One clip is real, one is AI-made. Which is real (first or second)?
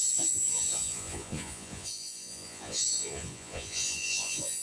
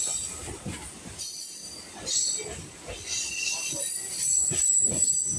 second